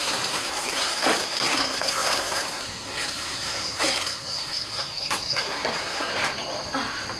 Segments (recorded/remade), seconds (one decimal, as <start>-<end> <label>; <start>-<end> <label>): 0.0-6.1 remade; 6.1-7.2 recorded